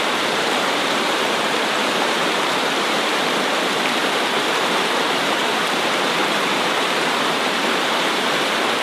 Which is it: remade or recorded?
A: remade